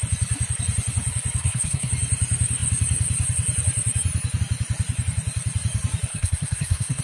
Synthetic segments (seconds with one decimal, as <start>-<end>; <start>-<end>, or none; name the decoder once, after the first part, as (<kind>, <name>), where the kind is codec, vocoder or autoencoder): 1.4-1.9 (codec, SNAC); 6.1-7.0